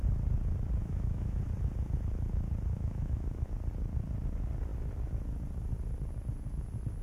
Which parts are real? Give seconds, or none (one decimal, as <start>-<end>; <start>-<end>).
0.0-0.8; 1.4-2.7; 3.5-7.0